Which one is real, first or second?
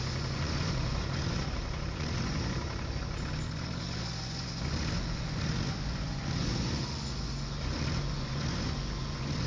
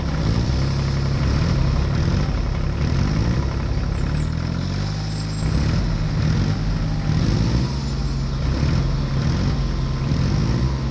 second